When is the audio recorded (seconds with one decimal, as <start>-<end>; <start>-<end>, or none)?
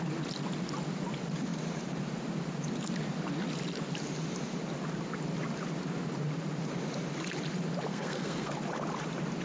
0.0-7.9; 8.5-9.4